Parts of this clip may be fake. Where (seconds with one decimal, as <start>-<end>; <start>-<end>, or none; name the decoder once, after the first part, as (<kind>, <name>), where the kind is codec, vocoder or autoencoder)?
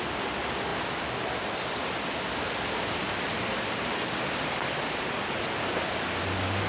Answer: none